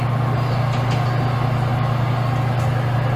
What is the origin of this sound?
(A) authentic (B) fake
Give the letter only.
A